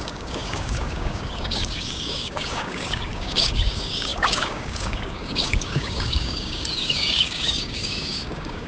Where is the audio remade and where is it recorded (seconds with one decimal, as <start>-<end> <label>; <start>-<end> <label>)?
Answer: 0.0-8.7 remade